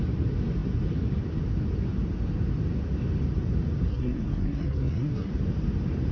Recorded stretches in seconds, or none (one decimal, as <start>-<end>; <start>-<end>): 0.0-3.9; 5.3-6.1